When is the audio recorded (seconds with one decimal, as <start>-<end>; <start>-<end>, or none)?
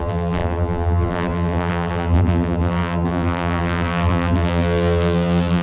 none